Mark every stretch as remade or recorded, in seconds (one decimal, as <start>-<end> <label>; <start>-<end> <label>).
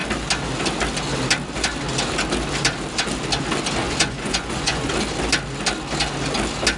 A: 0.0-3.8 recorded; 3.8-4.9 remade; 4.9-6.8 recorded